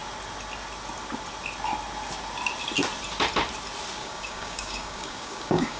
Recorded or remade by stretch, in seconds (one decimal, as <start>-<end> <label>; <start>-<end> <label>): 0.0-4.0 recorded; 4.0-5.8 remade